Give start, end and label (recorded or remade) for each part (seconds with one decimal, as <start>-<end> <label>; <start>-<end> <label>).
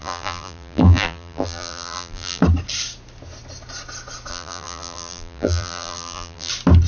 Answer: 0.0-2.4 remade; 2.4-4.3 recorded; 4.3-6.5 remade; 6.5-6.9 recorded